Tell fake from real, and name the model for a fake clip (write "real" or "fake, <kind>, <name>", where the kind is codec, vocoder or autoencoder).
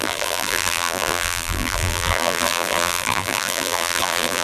fake, vocoder, BigVGAN v2